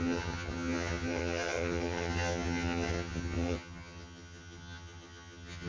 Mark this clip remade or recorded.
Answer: remade